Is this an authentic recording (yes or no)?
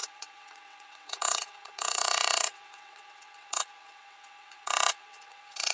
no